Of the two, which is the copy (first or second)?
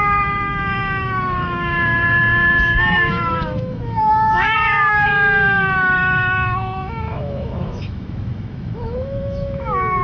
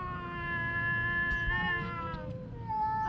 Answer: first